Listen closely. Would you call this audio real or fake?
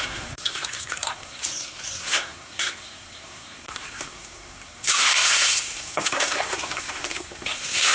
fake